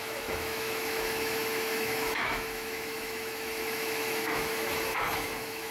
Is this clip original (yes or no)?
no